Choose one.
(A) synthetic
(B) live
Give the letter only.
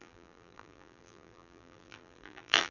A